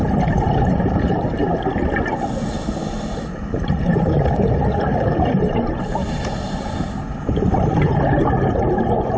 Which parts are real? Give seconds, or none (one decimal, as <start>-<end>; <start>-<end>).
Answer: 1.4-3.4